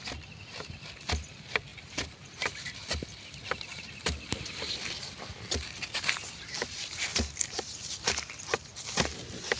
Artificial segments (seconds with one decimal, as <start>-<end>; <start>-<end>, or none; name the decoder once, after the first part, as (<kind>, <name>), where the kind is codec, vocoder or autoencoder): 1.7-5.9 (vocoder, BigVGAN v2); 7.1-9.6